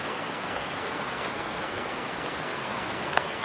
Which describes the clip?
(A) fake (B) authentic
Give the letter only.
A